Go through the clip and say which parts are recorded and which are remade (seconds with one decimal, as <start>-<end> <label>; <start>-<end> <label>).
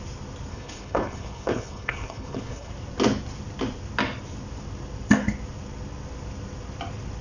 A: 0.0-0.5 recorded; 0.5-2.7 remade; 2.7-7.2 recorded